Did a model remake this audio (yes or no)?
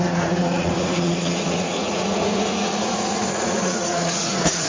yes